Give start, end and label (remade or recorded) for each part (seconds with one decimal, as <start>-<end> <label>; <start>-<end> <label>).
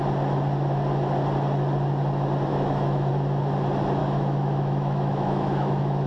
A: 0.0-2.5 recorded; 2.5-3.1 remade; 3.1-4.0 recorded; 4.0-6.1 remade